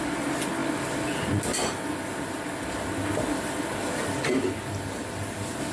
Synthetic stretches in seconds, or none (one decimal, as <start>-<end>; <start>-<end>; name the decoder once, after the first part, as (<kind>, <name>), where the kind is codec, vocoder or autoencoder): none